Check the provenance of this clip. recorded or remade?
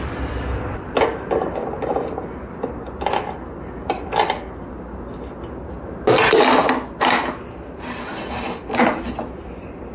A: recorded